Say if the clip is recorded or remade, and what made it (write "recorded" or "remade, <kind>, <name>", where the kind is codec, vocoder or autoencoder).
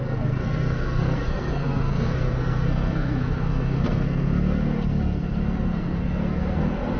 remade, codec, SNAC